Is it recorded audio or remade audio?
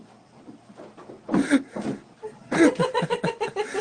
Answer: remade